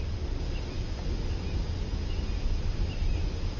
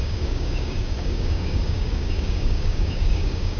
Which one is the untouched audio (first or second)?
first